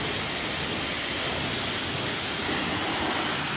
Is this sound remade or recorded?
recorded